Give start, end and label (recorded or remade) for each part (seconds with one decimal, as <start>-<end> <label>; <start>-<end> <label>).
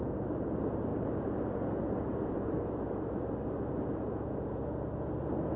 0.0-5.6 recorded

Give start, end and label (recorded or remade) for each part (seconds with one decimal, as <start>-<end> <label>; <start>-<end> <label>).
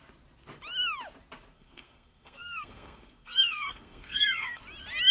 0.0-1.5 recorded; 1.5-4.6 remade; 4.6-5.1 recorded